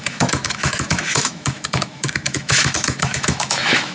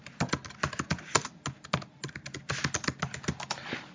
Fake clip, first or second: first